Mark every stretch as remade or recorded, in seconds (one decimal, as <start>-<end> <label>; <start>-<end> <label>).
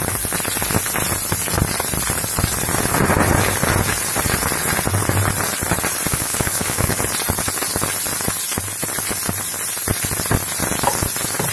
0.0-6.1 recorded; 6.1-7.0 remade; 7.0-11.5 recorded